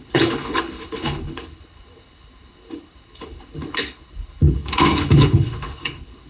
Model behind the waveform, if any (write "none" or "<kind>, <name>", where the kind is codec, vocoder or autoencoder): codec, HILCodec